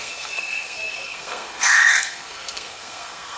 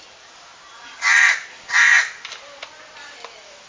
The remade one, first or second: first